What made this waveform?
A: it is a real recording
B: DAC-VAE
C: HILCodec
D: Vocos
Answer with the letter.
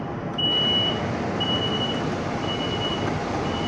A